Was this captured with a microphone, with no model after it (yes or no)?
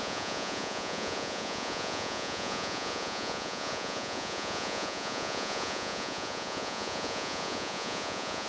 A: no